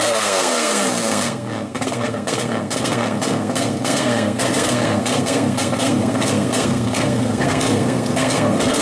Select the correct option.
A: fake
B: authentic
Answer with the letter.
A